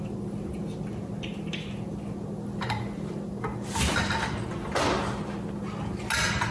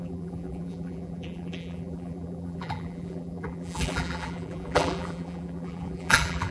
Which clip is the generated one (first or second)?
second